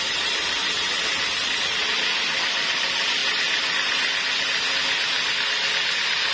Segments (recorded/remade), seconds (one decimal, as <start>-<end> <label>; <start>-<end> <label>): 0.0-6.3 recorded